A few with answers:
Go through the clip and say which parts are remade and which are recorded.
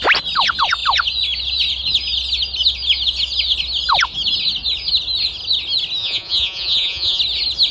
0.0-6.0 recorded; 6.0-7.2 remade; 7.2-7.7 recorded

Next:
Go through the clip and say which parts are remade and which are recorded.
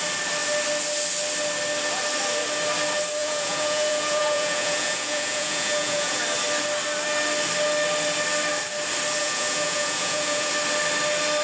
0.0-3.2 recorded; 3.2-6.2 remade; 6.2-9.2 recorded; 9.2-10.5 remade; 10.5-11.4 recorded